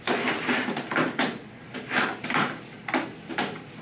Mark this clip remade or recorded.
recorded